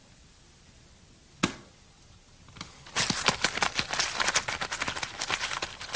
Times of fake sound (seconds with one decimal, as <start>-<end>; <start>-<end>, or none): none